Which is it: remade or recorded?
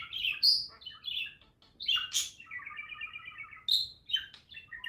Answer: recorded